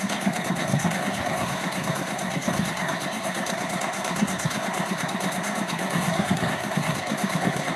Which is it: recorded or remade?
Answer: remade